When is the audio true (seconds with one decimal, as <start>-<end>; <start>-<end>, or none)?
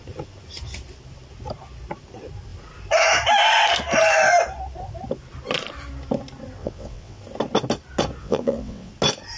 0.0-6.6; 7.2-8.2; 8.9-9.4